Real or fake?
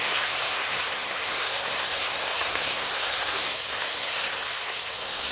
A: fake